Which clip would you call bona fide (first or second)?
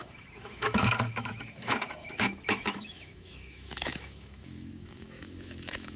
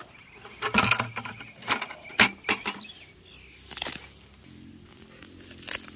second